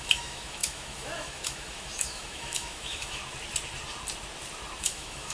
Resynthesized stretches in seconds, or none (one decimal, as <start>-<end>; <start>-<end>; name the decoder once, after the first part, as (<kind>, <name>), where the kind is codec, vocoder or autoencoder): 0.0-3.2 (autoencoder, DAC-VAE); 4.8-5.3